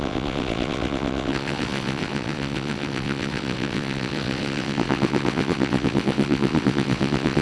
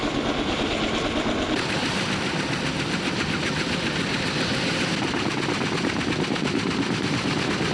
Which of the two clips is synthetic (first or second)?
first